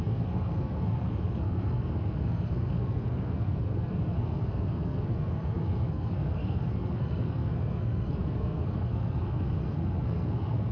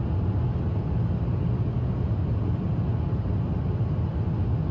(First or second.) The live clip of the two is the second